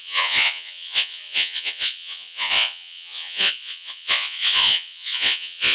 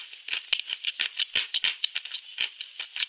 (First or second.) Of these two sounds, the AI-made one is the first